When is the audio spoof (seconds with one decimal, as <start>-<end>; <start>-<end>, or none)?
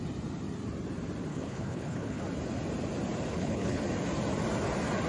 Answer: 1.3-2.2; 3.3-3.8